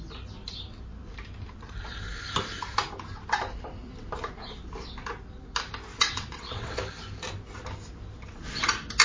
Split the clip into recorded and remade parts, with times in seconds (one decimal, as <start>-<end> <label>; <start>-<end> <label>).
0.0-5.9 recorded; 5.9-6.8 remade; 6.8-9.0 recorded